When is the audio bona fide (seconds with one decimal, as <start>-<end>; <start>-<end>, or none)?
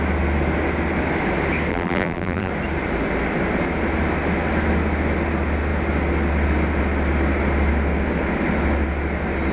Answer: 0.0-1.7; 2.5-9.5